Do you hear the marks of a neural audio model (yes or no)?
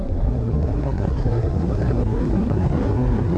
yes